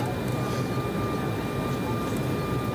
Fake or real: real